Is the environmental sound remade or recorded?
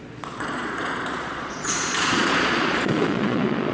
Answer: remade